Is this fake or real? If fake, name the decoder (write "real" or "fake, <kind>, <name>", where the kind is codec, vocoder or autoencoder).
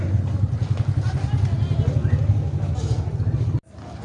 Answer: real